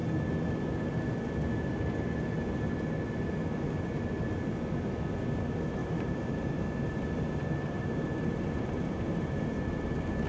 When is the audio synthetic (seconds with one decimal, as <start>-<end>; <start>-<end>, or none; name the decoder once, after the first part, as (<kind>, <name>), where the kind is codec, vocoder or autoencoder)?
5.8-9.9 (vocoder, BigVGAN v2)